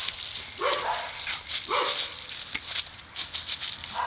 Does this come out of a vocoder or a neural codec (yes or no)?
no